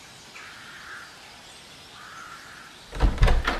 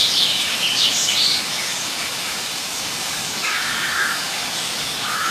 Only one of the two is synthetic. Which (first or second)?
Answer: second